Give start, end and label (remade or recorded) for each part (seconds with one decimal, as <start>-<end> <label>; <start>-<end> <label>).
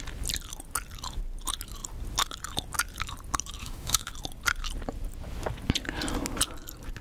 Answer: 0.0-3.6 recorded; 3.6-4.1 remade; 4.1-7.0 recorded